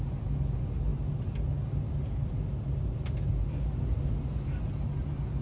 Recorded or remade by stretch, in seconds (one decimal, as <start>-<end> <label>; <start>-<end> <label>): 0.0-5.4 recorded